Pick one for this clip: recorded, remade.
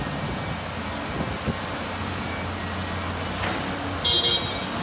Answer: recorded